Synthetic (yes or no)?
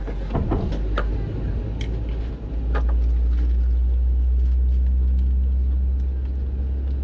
no